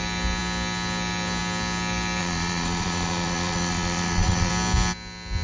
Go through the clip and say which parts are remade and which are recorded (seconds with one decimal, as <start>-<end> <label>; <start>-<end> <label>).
0.0-2.2 recorded; 2.2-4.5 remade; 4.5-5.4 recorded